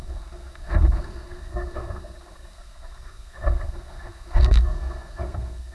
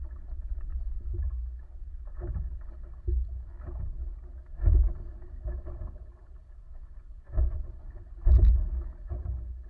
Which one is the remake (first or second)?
first